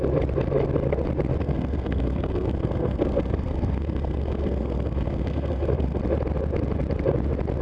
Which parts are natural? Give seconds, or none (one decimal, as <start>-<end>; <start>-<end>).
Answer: 0.0-1.4; 6.0-7.6